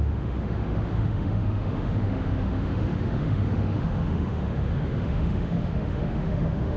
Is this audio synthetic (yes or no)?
yes